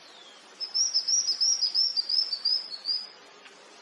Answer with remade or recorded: remade